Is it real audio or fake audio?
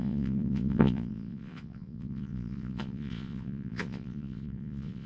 fake